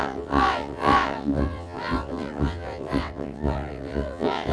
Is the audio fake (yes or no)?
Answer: yes